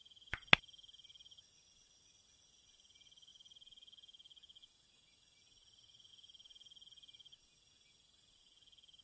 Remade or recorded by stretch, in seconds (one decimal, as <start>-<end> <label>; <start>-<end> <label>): 0.0-9.0 recorded